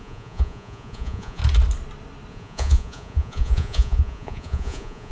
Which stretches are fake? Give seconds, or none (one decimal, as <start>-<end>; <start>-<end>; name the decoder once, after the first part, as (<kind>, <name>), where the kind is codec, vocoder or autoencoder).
0.0-1.4 (vocoder, Vocos); 2.3-5.1